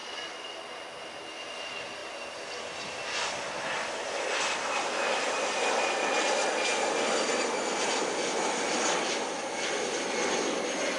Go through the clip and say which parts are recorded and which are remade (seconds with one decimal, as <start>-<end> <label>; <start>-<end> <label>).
0.0-0.7 remade; 0.7-11.0 recorded